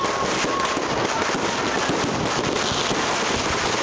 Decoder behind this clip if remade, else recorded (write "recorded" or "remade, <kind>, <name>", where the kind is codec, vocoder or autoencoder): recorded